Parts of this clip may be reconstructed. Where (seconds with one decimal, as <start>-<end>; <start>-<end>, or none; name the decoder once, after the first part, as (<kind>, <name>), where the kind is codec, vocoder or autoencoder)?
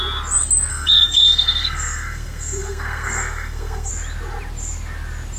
0.7-3.9 (codec, SNAC)